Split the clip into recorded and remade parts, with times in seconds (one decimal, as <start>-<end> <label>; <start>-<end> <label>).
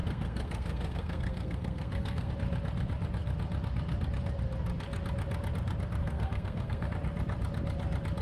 0.0-2.3 remade; 2.3-6.0 recorded; 6.0-6.9 remade; 6.9-8.2 recorded